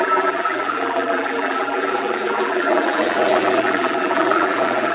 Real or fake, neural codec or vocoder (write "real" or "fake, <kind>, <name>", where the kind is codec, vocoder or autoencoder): fake, vocoder, BigVGAN v2